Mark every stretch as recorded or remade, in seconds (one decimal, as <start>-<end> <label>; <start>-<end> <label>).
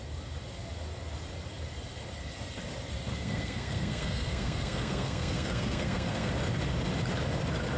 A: 0.0-3.1 recorded; 3.1-6.3 remade; 6.3-7.8 recorded